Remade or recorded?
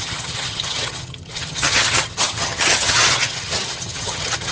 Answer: remade